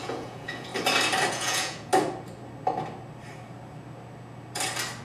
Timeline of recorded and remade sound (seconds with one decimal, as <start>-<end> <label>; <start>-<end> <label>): 0.0-0.7 remade; 0.7-1.3 recorded; 1.3-1.9 remade; 1.9-5.0 recorded